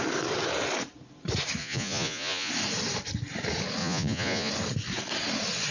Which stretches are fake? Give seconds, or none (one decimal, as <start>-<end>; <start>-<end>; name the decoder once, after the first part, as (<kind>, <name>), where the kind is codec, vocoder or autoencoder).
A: 1.6-2.5 (vocoder, Vocos); 3.8-4.5